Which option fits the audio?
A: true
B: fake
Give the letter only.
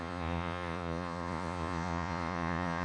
B